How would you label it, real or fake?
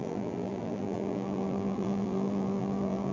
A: fake